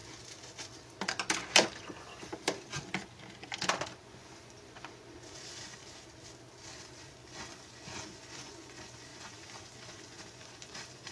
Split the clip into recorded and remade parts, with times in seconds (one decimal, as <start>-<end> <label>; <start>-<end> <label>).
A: 0.0-1.8 recorded; 1.8-2.3 remade; 2.3-4.0 recorded; 4.0-5.8 remade; 5.8-6.8 recorded; 6.8-11.1 remade